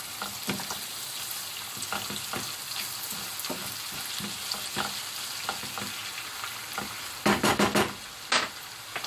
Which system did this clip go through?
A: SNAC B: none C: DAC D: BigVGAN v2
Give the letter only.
B